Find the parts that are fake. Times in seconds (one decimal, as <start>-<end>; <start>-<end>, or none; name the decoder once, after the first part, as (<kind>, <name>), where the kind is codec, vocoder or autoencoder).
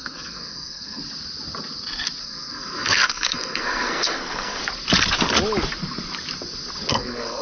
0.0-1.0 (codec, SNAC); 2.2-4.6; 6.9-7.4